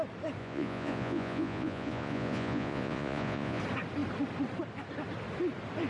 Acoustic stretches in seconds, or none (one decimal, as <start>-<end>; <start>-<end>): 0.0-0.4; 3.6-5.9